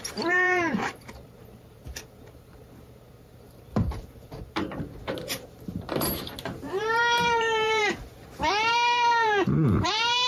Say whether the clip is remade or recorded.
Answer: remade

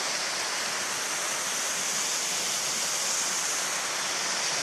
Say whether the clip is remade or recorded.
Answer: recorded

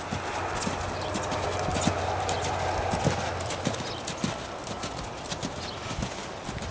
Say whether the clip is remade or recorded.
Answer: recorded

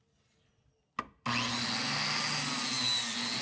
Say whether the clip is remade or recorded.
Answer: recorded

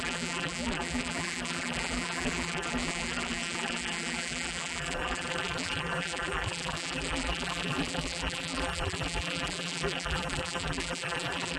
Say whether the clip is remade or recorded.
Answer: remade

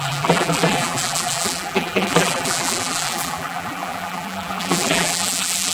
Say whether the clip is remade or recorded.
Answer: remade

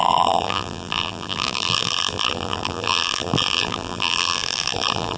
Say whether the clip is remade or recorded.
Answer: remade